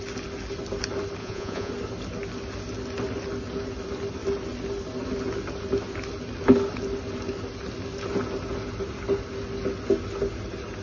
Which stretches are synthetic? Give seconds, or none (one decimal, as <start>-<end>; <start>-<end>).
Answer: 1.2-1.7